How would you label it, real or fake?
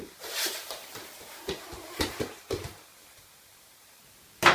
fake